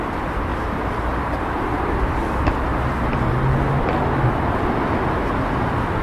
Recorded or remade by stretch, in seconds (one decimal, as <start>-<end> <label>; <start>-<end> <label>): 0.0-0.5 recorded; 0.5-1.9 remade; 1.9-6.0 recorded